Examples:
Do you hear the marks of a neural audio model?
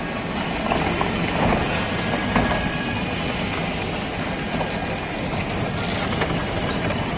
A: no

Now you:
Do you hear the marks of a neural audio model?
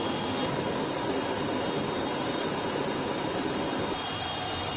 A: no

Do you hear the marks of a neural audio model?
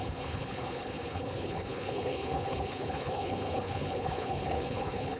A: yes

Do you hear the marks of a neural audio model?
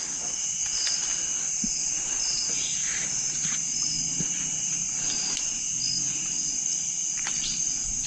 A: no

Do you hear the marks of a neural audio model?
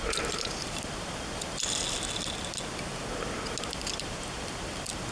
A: no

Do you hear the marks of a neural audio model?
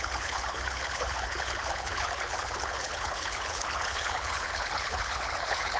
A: yes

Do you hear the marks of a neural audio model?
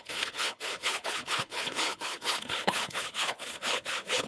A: yes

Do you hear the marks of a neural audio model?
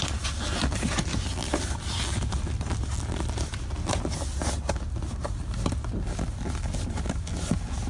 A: no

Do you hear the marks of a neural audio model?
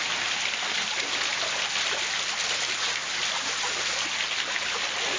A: no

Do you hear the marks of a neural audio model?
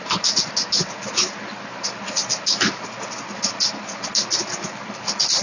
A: no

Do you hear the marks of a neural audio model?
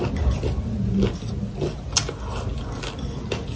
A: no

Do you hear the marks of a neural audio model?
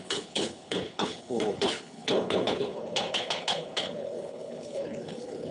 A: yes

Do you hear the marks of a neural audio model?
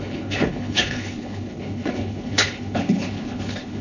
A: yes